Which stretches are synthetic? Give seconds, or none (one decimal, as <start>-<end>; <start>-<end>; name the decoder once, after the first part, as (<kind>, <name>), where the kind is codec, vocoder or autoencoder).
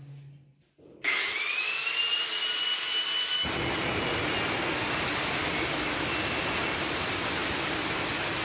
none